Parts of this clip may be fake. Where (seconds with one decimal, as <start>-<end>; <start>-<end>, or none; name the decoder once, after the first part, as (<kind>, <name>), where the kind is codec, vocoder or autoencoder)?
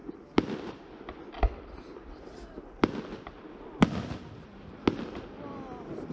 none